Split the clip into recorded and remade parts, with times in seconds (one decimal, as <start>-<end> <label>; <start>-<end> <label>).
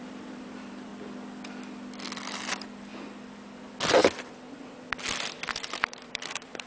0.0-0.9 remade; 0.9-2.5 recorded; 2.5-2.9 remade; 2.9-5.5 recorded; 5.5-6.7 remade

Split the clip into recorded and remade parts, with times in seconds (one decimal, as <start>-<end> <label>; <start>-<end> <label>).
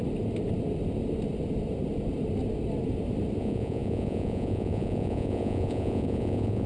0.0-3.4 recorded; 3.4-6.7 remade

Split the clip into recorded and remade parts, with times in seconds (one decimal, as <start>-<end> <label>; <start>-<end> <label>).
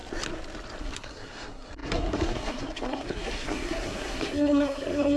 0.0-0.8 recorded; 0.8-5.2 remade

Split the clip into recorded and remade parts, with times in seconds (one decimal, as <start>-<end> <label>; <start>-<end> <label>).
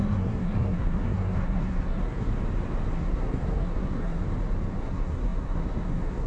0.0-2.3 remade; 2.3-2.9 recorded; 2.9-4.2 remade; 4.2-4.8 recorded; 4.8-6.3 remade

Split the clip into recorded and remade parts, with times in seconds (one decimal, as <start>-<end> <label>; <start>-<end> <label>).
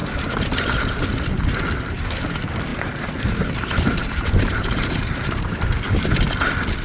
0.0-2.7 recorded; 2.7-6.1 remade; 6.1-6.8 recorded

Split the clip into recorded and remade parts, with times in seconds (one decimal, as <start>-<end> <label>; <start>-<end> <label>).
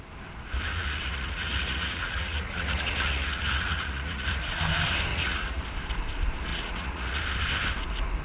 0.0-0.7 recorded; 0.7-4.6 remade; 4.6-5.1 recorded; 5.1-5.6 remade; 5.6-6.5 recorded; 6.5-7.2 remade; 7.2-8.2 recorded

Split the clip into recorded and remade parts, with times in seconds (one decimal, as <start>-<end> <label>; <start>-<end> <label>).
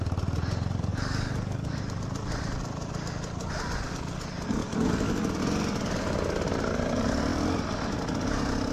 0.0-0.9 recorded; 0.9-1.8 remade; 1.8-4.6 recorded; 4.6-5.4 remade; 5.4-8.7 recorded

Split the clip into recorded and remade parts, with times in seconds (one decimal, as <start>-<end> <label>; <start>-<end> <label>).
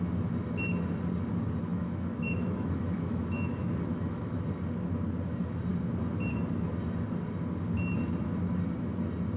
0.0-1.7 recorded; 1.7-4.4 remade; 4.4-9.4 recorded